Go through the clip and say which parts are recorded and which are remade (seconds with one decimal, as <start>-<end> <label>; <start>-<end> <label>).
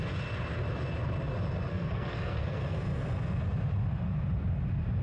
0.0-1.7 recorded; 1.7-2.8 remade; 2.8-5.0 recorded